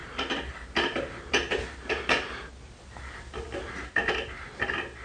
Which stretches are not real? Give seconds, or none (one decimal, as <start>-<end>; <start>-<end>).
none